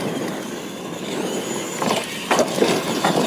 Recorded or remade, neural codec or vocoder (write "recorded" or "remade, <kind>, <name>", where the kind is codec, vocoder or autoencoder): recorded